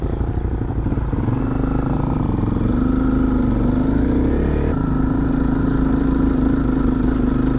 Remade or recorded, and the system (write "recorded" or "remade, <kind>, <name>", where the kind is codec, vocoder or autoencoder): recorded